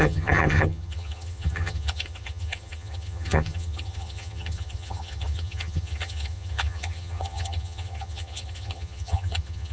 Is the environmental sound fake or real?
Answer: fake